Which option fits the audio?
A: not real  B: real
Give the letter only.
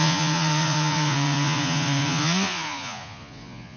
A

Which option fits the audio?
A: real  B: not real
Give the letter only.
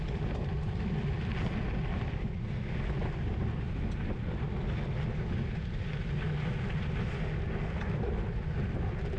A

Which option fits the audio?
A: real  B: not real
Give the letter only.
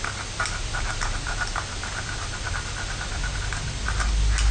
A